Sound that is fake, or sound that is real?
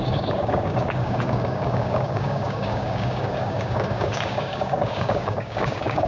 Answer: fake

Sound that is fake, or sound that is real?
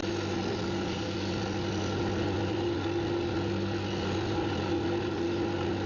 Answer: real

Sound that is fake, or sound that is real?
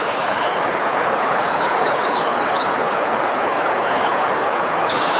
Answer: fake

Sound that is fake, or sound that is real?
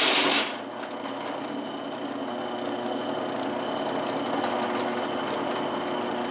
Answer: real